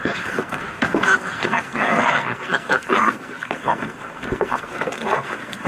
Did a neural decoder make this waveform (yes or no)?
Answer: yes